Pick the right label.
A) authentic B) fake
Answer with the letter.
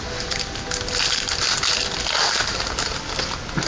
A